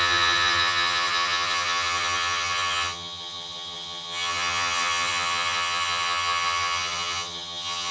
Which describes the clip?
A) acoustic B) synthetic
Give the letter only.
B